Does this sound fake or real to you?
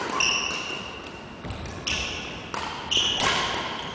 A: real